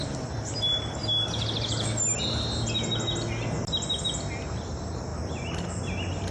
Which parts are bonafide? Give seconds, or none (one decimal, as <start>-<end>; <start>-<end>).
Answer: 0.0-6.3